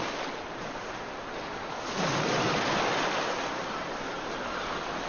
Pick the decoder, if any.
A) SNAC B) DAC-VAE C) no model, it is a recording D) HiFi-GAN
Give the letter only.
C